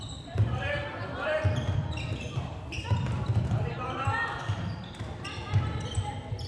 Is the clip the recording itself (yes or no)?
no